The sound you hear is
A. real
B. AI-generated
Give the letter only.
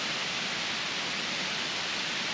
A